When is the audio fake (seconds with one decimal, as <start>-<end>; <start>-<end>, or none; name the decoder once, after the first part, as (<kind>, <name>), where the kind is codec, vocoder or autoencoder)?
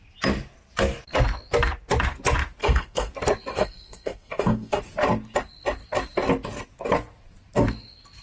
2.6-3.1 (codec, SNAC); 3.5-4.8